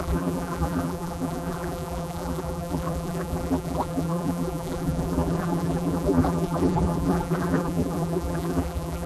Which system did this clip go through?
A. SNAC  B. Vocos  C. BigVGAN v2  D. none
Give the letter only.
C